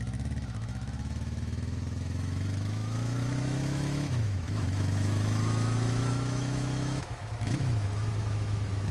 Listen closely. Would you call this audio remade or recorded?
remade